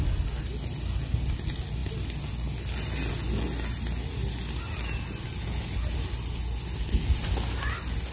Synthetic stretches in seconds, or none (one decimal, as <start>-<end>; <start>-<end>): none